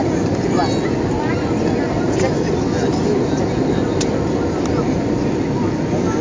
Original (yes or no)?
yes